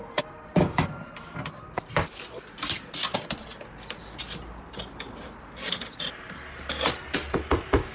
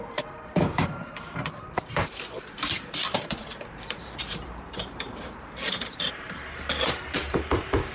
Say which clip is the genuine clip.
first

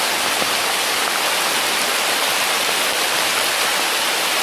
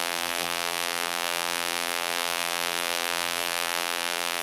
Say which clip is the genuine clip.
first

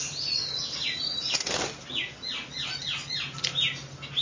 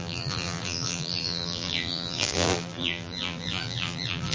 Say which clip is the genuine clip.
first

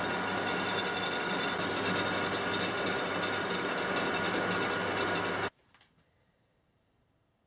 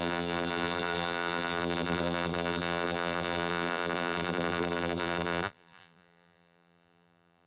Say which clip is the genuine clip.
first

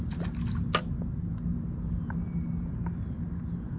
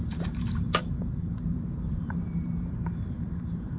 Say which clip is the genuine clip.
first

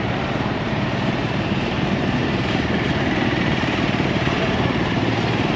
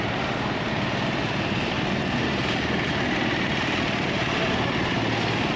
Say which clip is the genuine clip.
second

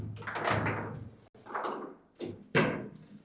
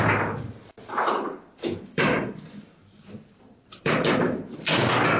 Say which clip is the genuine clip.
first